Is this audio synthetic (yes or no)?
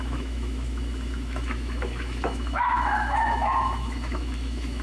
yes